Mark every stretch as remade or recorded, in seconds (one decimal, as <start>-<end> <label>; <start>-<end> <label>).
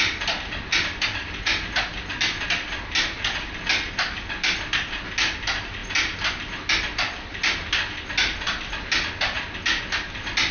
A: 0.0-10.5 recorded